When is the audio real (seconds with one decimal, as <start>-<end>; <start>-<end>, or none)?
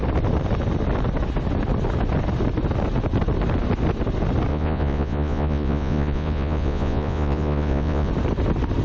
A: 0.0-4.5; 8.1-8.8